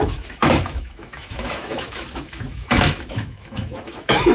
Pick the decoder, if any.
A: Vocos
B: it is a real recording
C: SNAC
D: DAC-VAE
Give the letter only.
D